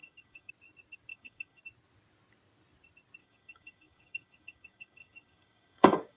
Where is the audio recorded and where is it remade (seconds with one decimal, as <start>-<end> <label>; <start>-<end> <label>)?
0.0-0.5 remade; 0.5-1.1 recorded; 1.1-1.6 remade; 1.6-3.2 recorded; 3.2-6.2 remade